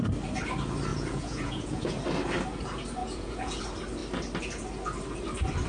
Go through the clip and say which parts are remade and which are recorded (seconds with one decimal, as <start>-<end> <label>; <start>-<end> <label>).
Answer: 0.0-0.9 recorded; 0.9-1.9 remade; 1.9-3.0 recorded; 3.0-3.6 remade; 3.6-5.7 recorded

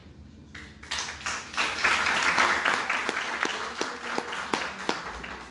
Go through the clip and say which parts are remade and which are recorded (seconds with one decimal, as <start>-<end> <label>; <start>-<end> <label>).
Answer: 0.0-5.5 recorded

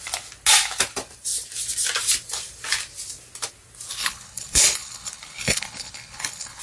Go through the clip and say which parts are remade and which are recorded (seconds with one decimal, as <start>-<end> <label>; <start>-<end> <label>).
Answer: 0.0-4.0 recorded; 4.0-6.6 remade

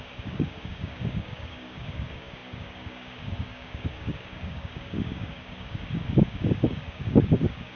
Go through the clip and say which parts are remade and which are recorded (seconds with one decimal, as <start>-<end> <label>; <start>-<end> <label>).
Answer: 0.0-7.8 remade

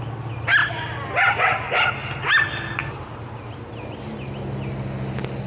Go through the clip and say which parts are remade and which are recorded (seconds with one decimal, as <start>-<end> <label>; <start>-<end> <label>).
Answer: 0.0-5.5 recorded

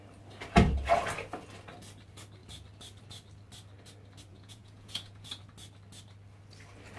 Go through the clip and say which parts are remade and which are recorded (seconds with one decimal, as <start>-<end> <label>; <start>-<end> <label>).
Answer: 0.0-4.3 recorded; 4.3-5.4 remade; 5.4-7.0 recorded